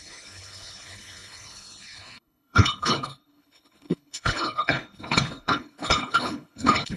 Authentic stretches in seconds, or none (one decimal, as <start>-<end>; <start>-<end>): none